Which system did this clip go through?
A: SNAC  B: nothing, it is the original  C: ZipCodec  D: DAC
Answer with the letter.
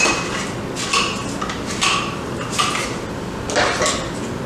B